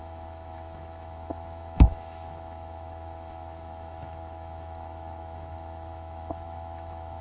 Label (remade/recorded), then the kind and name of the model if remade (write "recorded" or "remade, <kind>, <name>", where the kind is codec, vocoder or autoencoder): remade, autoencoder, DAC-VAE